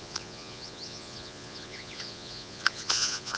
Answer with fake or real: fake